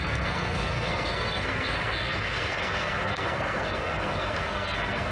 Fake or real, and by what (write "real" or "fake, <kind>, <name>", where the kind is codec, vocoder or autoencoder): fake, codec, SNAC